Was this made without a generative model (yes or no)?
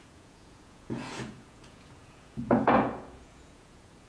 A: no